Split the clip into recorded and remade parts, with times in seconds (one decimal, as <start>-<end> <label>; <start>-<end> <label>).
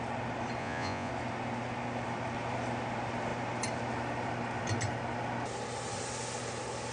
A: 0.0-0.6 recorded; 0.6-1.1 remade; 1.1-6.9 recorded